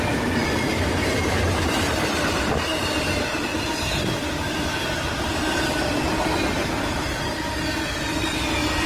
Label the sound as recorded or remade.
recorded